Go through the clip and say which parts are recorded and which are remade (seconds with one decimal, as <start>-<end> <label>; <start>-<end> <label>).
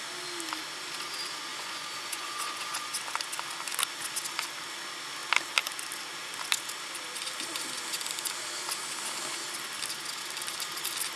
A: 0.0-1.5 recorded; 1.5-2.9 remade; 2.9-11.2 recorded